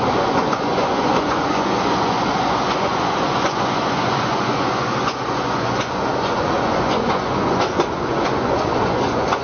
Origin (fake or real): fake